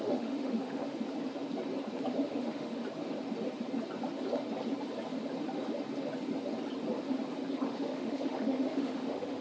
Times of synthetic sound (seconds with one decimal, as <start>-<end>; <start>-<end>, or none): 0.0-0.8; 2.3-2.8; 7.5-9.4